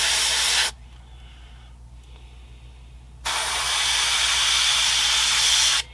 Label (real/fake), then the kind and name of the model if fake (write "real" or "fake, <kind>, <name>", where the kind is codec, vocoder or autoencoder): real